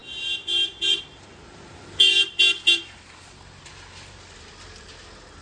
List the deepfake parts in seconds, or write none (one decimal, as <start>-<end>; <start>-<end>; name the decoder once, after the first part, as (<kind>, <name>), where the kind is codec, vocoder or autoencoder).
none